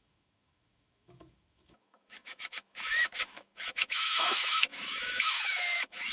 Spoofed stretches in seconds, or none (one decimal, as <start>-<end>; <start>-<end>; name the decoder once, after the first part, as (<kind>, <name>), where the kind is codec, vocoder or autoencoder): 0.0-6.1 (autoencoder, DAC-VAE)